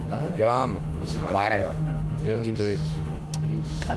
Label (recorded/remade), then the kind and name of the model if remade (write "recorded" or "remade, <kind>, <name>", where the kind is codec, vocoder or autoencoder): remade, autoencoder, DAC-VAE